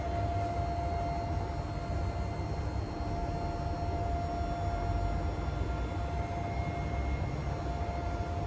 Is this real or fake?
real